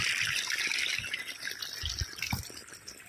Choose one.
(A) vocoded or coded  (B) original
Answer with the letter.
B